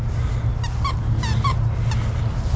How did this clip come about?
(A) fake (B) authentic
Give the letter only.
B